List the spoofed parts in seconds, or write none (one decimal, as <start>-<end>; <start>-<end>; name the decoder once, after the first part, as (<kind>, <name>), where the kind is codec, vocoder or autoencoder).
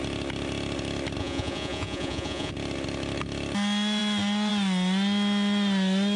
1.2-2.5 (vocoder, Vocos)